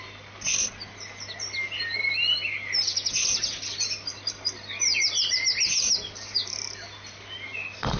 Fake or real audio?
real